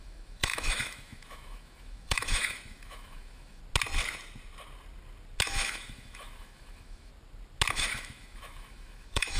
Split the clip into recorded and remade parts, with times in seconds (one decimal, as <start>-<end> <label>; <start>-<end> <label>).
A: 0.0-3.6 remade; 3.6-5.4 recorded; 5.4-7.1 remade; 7.1-7.7 recorded; 7.7-9.4 remade